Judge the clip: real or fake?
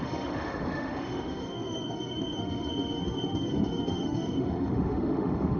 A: fake